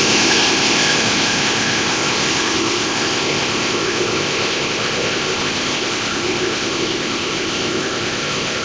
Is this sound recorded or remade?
remade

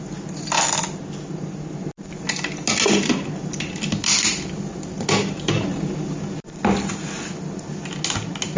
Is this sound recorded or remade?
recorded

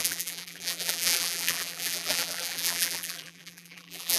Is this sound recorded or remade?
remade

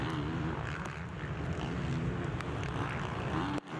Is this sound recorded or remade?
recorded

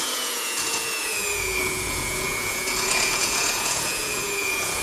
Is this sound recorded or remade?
remade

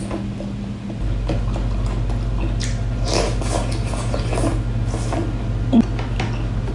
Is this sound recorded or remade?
recorded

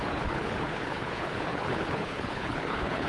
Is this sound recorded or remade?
remade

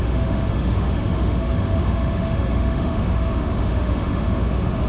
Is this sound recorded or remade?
remade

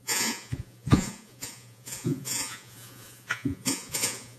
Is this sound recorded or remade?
remade